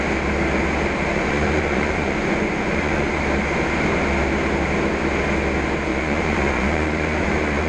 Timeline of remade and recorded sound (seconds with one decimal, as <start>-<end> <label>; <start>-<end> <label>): 0.0-1.1 recorded; 1.1-3.2 remade; 3.2-5.9 recorded; 5.9-7.7 remade